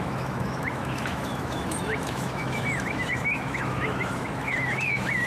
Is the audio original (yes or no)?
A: no